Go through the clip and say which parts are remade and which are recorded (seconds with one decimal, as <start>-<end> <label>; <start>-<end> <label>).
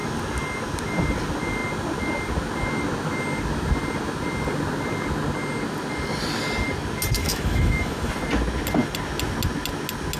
0.0-7.2 recorded; 7.2-8.1 remade; 8.1-10.2 recorded